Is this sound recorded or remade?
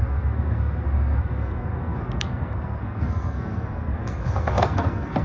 remade